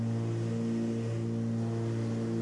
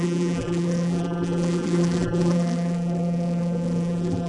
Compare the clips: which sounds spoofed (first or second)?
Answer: second